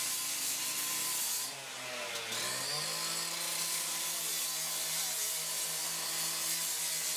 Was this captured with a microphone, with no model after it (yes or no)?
yes